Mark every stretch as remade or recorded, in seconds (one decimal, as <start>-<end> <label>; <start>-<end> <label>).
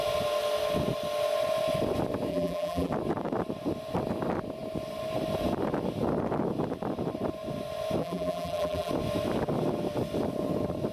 0.0-2.3 recorded; 2.3-2.9 remade; 2.9-8.0 recorded; 8.0-8.9 remade; 8.9-10.9 recorded